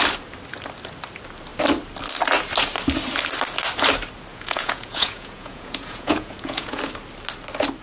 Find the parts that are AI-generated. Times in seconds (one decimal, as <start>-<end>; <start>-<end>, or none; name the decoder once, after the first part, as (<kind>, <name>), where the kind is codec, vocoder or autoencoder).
4.3-6.8 (vocoder, Vocos)